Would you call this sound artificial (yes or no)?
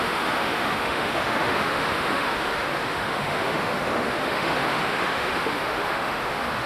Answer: yes